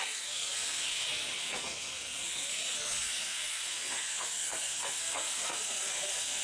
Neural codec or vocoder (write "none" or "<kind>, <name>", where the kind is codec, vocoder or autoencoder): codec, SNAC